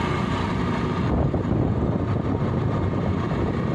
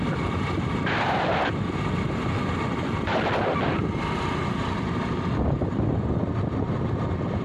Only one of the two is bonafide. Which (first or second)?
first